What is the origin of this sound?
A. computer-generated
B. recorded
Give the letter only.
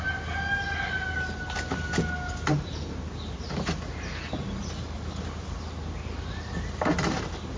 B